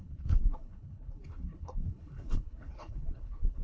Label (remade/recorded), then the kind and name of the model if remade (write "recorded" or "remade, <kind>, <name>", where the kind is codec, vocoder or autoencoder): remade, codec, HILCodec